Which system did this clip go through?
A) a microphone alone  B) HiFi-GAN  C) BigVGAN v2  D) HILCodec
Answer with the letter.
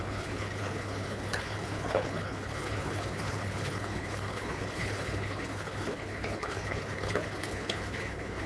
D